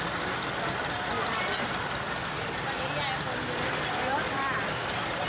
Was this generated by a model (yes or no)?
no